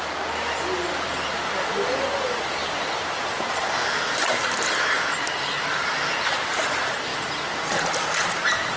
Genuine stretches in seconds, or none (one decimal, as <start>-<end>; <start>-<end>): 0.0-8.8